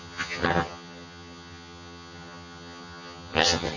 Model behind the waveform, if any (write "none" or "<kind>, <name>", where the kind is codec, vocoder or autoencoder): vocoder, HiFi-GAN